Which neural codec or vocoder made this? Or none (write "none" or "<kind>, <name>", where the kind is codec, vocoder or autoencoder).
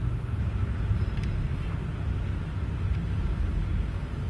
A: none